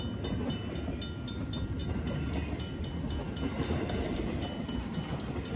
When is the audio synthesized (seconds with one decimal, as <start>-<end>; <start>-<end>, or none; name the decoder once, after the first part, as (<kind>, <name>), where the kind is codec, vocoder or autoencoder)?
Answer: none

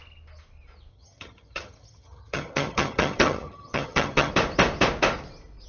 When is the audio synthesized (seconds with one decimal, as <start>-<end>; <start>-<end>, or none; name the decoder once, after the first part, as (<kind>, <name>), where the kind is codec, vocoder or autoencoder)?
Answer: 0.9-4.3 (vocoder, HiFi-GAN)

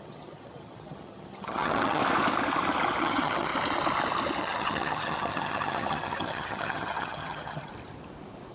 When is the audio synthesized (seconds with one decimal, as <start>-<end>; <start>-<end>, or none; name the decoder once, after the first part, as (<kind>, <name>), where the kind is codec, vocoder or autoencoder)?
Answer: 0.0-2.0 (vocoder, HiFi-GAN); 3.0-3.5; 4.4-7.7

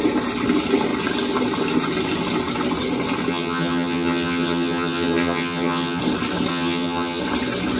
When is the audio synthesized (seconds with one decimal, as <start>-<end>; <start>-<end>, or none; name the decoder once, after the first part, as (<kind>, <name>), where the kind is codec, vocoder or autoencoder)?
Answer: 3.3-6.0 (vocoder, HiFi-GAN); 6.5-7.2

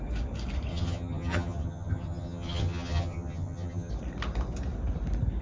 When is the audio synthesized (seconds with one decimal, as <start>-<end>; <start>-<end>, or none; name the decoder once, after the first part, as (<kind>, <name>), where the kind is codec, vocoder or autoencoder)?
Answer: 0.7-3.9 (vocoder, HiFi-GAN)

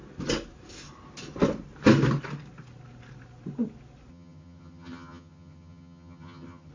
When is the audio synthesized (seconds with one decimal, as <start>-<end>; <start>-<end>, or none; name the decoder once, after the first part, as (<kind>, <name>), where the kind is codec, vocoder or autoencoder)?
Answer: 4.1-6.7 (vocoder, HiFi-GAN)